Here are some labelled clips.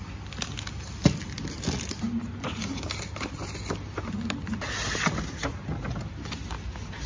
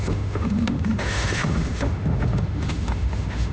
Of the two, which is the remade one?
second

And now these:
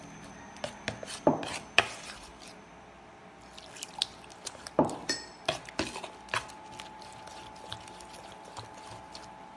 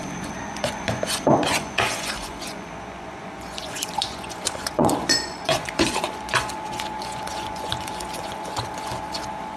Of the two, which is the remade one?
second